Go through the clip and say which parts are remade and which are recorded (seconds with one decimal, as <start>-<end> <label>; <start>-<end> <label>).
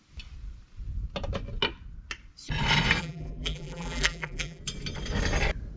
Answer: 0.0-3.0 recorded; 3.0-4.6 remade; 4.6-5.8 recorded